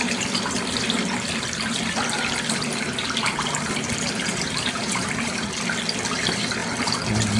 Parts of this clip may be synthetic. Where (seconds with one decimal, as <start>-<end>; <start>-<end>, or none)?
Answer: 4.3-5.6